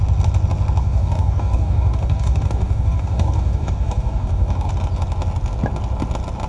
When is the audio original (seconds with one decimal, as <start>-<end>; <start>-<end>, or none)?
0.0-0.8; 4.7-6.5